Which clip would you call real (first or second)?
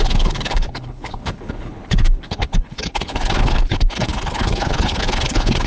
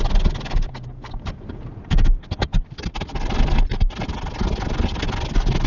second